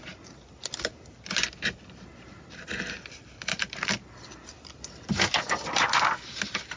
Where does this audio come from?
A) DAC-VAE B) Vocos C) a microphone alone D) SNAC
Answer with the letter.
C